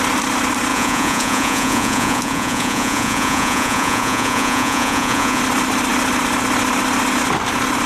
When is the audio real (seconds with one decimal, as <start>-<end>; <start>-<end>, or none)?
0.0-0.7; 5.4-7.9